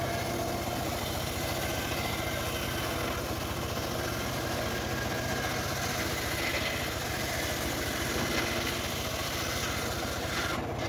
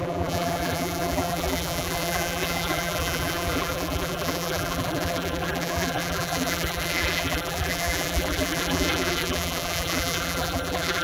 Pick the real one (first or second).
first